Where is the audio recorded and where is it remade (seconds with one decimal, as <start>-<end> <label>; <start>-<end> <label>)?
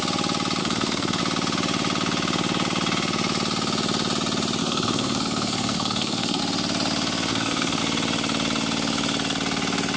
0.0-0.6 recorded; 0.6-1.2 remade; 1.2-4.6 recorded; 4.6-6.4 remade; 6.4-7.3 recorded; 7.3-7.8 remade; 7.8-10.0 recorded